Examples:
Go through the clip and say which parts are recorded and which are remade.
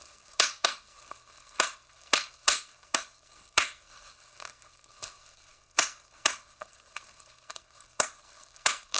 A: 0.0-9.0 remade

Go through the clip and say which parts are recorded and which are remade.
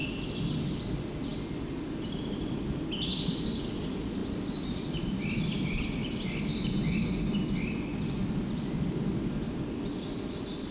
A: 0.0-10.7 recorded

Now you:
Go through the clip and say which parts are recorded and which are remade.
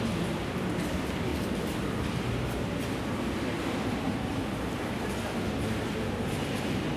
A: 0.0-1.3 recorded; 1.3-2.8 remade; 2.8-7.0 recorded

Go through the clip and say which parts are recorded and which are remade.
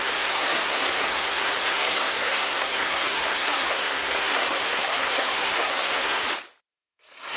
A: 0.0-6.2 remade; 6.2-6.7 recorded; 6.7-7.4 remade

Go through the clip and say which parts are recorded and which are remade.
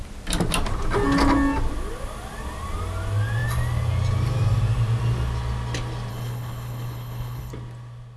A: 0.0-6.1 recorded; 6.1-7.5 remade; 7.5-8.2 recorded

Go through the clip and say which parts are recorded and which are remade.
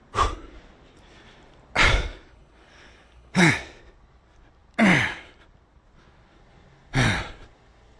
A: 0.0-2.3 recorded; 2.3-3.5 remade; 3.5-8.0 recorded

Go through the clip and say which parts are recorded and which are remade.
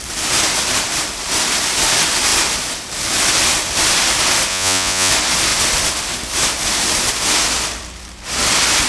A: 0.0-4.5 recorded; 4.5-5.1 remade; 5.1-8.9 recorded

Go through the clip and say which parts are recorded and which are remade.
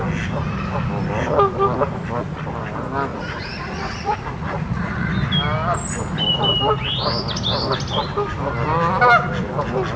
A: 0.0-3.1 recorded; 3.1-5.1 remade; 5.1-10.0 recorded